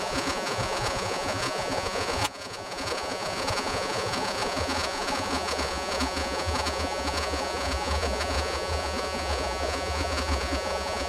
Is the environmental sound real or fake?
fake